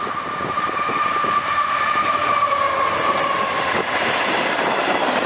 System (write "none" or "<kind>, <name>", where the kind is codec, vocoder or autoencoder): vocoder, BigVGAN v2